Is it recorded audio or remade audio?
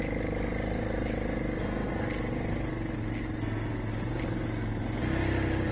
recorded